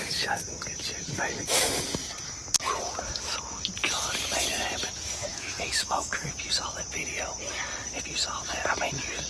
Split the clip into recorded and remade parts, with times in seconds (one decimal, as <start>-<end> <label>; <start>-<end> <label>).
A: 0.0-5.3 recorded; 5.3-6.3 remade; 6.3-9.3 recorded